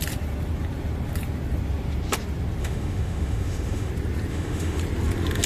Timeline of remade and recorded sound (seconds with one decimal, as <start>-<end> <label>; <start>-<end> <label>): 0.0-2.6 recorded; 2.6-3.9 remade; 3.9-4.3 recorded; 4.3-4.8 remade; 4.8-5.5 recorded